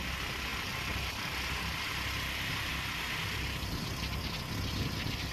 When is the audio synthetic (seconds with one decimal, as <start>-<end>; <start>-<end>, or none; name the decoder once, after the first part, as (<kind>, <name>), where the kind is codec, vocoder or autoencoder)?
none